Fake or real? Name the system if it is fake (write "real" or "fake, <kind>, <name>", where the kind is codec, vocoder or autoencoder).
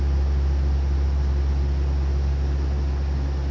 real